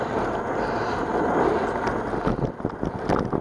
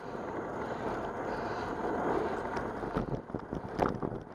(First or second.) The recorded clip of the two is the first